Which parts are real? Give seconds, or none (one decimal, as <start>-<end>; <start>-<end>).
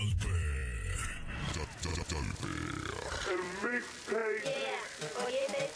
0.6-1.9